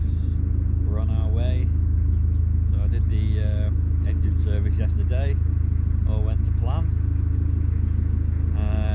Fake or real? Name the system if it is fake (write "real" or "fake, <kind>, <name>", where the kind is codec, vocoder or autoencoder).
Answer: real